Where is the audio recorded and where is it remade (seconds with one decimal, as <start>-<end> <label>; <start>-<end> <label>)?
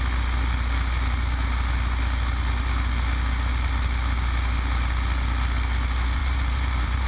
0.0-6.2 recorded; 6.2-7.1 remade